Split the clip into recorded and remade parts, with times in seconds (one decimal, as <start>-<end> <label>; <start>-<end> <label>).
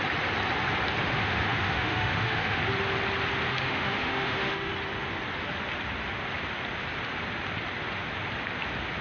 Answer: 0.0-1.0 recorded; 1.0-2.6 remade; 2.6-3.5 recorded; 3.5-4.7 remade; 4.7-9.0 recorded